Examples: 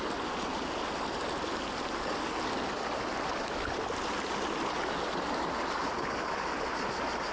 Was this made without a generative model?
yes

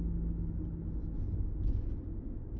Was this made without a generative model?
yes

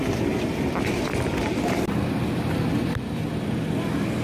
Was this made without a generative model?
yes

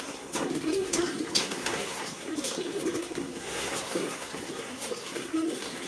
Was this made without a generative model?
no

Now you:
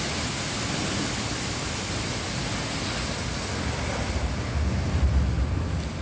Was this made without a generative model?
yes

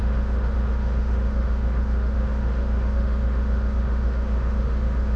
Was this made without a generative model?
no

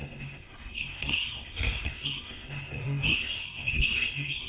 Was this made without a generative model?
no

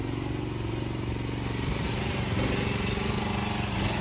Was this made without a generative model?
yes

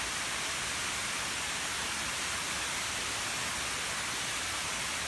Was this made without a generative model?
yes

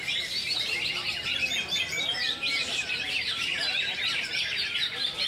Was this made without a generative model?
no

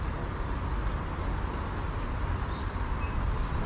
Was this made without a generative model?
yes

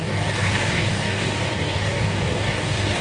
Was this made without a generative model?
no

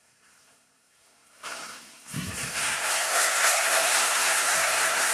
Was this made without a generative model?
no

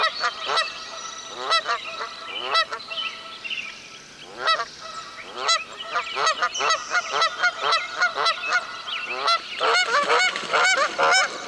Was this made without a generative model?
yes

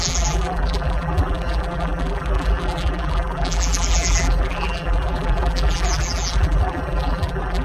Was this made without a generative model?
no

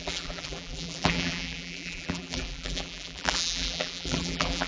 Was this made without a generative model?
no